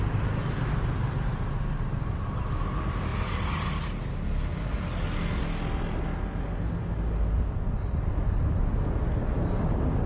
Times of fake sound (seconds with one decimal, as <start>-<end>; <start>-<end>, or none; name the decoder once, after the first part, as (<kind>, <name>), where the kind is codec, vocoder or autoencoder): 3.1-3.7 (vocoder, BigVGAN v2)